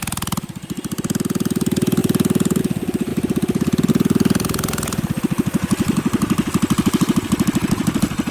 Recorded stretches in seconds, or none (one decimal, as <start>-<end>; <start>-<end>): 0.0-8.3